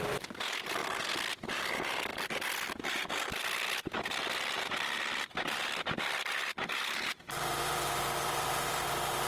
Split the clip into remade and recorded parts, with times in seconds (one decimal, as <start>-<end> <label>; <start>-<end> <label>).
0.0-0.8 remade; 0.8-1.5 recorded; 1.5-2.1 remade; 2.1-7.3 recorded; 7.3-9.3 remade